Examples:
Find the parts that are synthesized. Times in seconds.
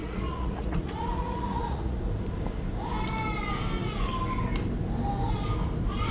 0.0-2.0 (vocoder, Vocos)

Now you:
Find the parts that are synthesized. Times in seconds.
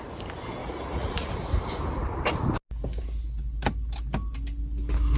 0.6-1.3 (vocoder, Vocos)